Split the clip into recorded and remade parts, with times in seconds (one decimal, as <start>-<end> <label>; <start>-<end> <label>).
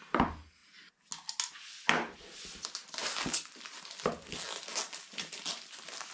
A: 0.0-6.1 recorded